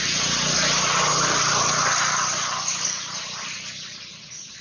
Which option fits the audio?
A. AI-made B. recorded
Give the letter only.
B